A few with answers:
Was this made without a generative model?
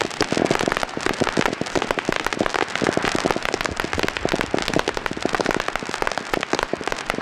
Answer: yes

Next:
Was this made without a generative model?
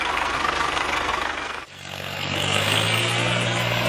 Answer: no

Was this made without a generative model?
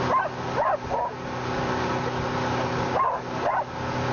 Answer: yes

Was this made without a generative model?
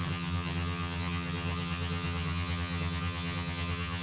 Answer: no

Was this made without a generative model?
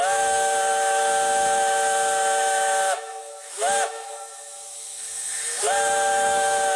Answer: no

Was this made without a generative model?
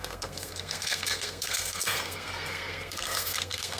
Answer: no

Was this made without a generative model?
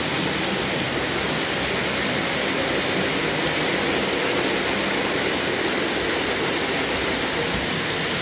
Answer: yes